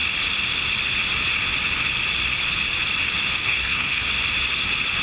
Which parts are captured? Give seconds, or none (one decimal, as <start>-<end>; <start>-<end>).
0.0-3.4; 4.0-5.0